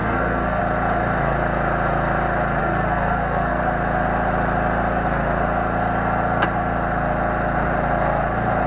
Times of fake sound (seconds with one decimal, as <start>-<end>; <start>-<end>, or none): 0.0-0.6; 2.6-3.6